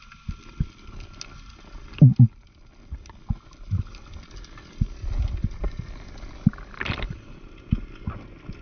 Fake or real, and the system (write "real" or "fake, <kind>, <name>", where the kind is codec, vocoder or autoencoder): real